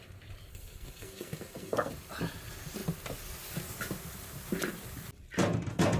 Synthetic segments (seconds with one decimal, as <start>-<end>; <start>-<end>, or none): 0.5-1.9